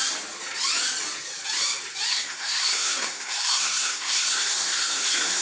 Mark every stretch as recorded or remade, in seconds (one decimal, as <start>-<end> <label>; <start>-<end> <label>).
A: 0.0-2.1 recorded; 2.1-5.4 remade